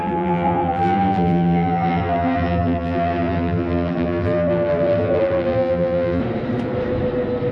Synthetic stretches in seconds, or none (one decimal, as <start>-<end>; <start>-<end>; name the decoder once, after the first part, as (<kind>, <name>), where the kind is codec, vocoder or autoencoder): 0.0-6.2 (vocoder, BigVGAN v2)